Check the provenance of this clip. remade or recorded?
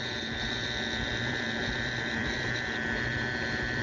remade